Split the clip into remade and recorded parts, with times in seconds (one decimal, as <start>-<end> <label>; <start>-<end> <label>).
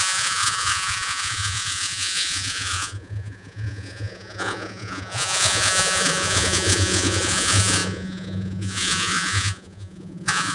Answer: 0.0-10.5 remade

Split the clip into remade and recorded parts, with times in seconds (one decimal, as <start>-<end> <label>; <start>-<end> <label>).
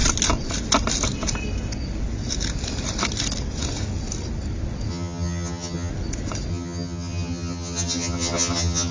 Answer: 0.0-4.9 recorded; 4.9-5.9 remade; 5.9-6.5 recorded; 6.5-8.9 remade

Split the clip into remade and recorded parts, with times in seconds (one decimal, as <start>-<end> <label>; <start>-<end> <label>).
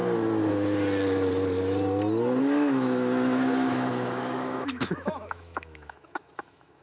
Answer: 0.0-2.4 recorded; 2.4-6.8 remade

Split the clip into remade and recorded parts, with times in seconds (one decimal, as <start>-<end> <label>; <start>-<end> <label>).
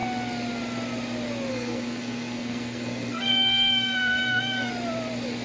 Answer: 0.0-1.5 recorded; 1.5-4.7 remade; 4.7-5.4 recorded